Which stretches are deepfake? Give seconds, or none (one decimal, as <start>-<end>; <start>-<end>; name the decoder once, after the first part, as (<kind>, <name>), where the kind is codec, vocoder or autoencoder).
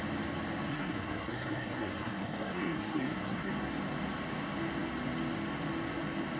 0.7-3.5 (codec, SNAC)